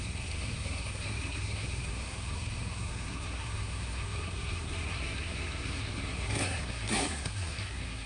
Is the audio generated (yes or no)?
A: yes